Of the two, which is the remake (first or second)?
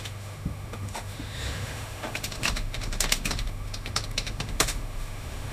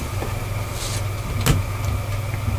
first